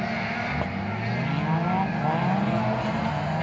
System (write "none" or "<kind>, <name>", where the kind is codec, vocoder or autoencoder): none